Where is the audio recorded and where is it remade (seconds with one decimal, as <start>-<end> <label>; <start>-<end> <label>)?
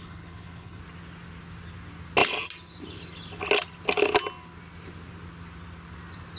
0.0-0.8 remade; 0.8-6.4 recorded